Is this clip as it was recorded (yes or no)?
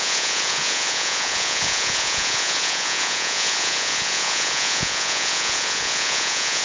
no